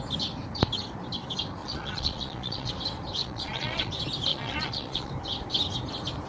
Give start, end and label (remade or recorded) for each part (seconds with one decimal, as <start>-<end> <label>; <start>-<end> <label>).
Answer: 0.0-1.6 recorded; 1.6-2.7 remade; 2.7-3.2 recorded; 3.2-3.9 remade; 3.9-4.3 recorded; 4.3-5.1 remade; 5.1-6.3 recorded